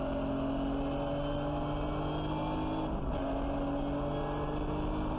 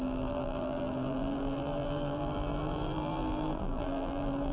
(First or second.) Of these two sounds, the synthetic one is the second